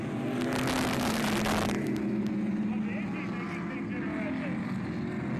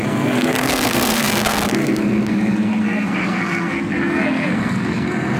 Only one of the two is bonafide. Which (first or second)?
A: first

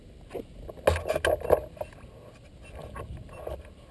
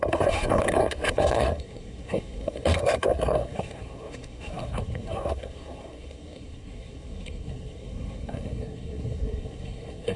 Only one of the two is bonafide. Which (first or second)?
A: first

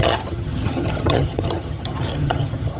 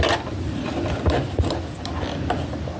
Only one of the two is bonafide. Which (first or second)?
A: second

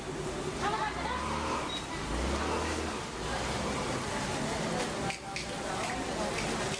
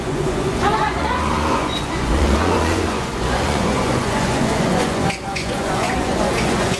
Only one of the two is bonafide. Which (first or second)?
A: first